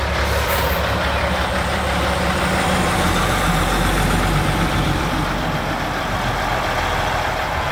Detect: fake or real fake